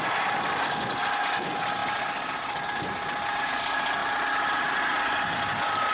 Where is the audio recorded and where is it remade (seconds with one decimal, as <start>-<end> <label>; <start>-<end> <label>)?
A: 0.0-1.8 recorded; 1.8-3.5 remade; 3.5-5.9 recorded